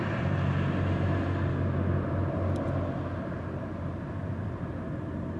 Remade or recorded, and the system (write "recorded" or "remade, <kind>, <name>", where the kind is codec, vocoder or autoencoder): recorded